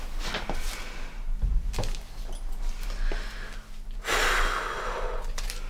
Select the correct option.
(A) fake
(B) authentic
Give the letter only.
B